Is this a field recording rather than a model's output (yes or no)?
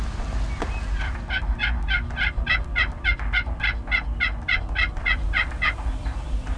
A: yes